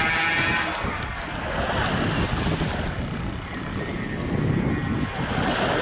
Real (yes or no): yes